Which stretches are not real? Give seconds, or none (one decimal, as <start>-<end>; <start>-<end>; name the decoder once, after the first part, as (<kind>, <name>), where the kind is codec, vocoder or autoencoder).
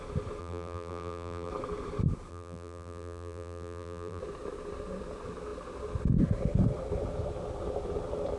0.4-1.5 (vocoder, BigVGAN v2); 2.3-4.2